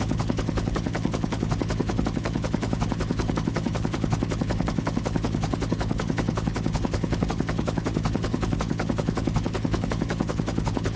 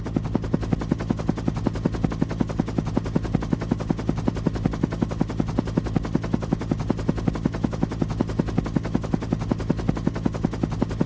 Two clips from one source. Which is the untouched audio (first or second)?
second